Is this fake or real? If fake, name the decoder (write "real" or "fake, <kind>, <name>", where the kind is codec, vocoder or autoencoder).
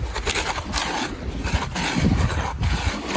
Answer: real